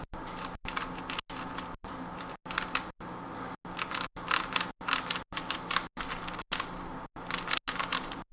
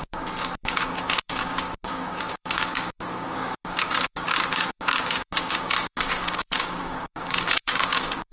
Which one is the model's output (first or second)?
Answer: second